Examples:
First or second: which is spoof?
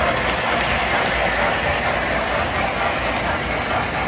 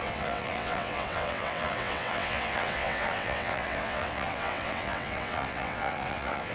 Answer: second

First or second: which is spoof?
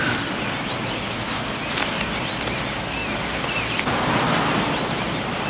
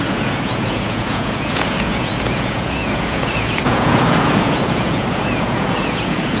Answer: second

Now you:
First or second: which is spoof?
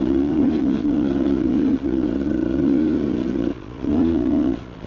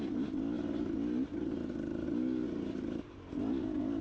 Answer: first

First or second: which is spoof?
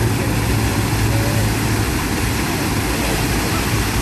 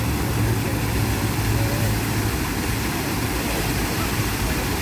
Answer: second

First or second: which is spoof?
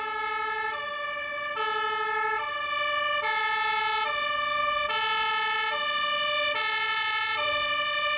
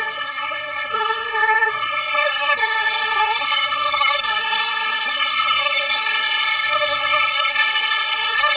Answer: second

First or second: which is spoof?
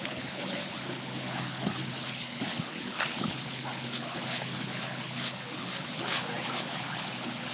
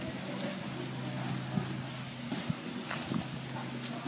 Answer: first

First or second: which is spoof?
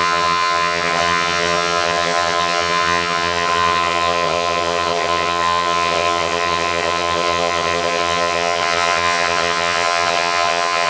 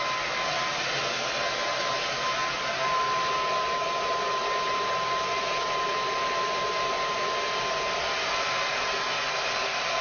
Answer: first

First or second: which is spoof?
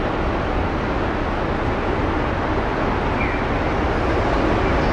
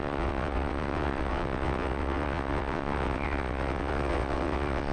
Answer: second